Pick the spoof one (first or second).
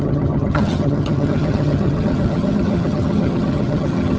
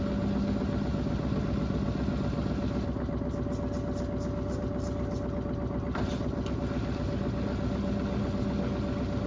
first